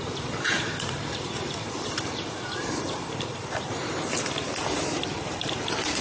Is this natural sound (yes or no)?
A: no